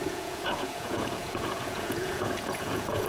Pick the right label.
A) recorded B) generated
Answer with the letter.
B